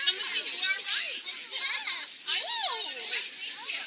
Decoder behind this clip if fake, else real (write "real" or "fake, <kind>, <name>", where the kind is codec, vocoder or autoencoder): real